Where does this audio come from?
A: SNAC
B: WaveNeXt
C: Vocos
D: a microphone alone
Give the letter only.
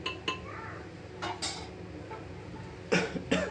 D